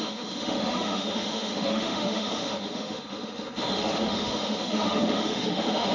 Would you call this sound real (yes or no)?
no